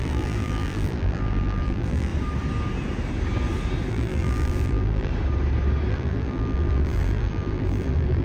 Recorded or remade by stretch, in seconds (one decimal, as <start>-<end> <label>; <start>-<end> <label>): 0.0-2.1 remade; 2.1-3.9 recorded; 3.9-5.1 remade; 5.1-5.9 recorded; 5.9-8.2 remade